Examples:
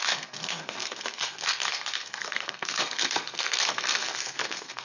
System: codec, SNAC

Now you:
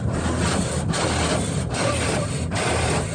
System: none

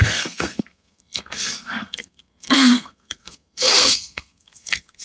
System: codec, SNAC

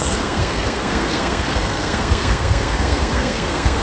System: codec, SNAC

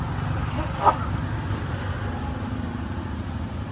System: none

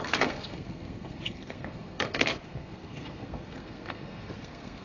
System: codec, SNAC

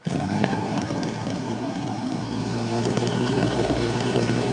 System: codec, SNAC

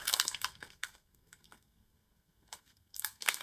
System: codec, SNAC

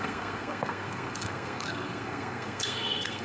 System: codec, SNAC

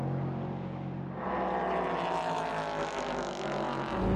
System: none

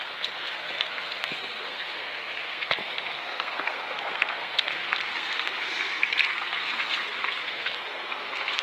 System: codec, SNAC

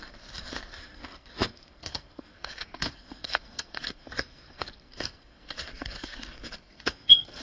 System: codec, SNAC